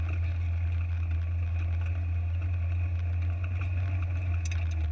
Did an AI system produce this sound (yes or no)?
no